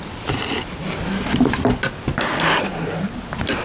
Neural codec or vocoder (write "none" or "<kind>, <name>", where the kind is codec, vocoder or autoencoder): none